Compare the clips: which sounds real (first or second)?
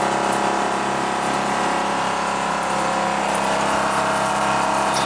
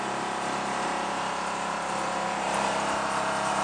first